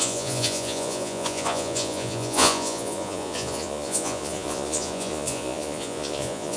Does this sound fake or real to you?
fake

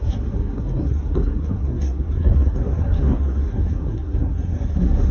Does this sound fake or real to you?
fake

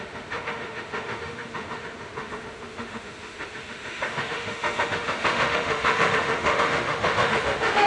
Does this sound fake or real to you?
fake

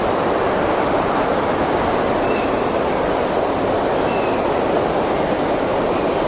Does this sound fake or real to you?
fake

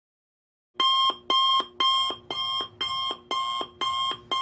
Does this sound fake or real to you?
real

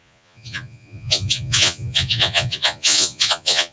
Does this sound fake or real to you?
fake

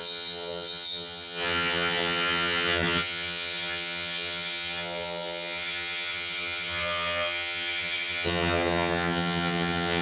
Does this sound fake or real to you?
fake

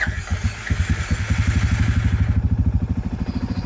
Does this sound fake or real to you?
real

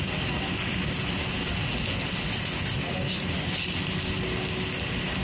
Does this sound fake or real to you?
real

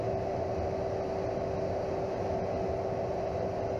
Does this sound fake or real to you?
real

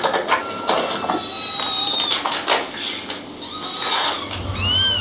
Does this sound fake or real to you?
real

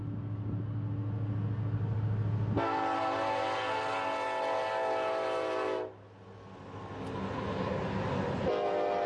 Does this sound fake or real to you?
real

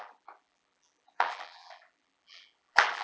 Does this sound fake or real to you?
fake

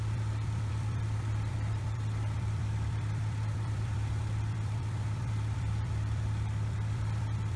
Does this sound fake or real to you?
fake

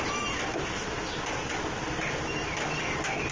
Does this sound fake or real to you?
real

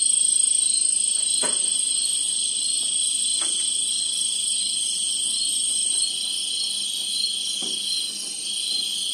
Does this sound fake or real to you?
real